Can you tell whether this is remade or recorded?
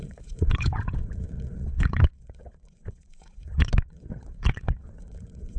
remade